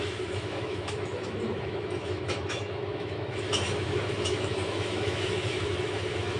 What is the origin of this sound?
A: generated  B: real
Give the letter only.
A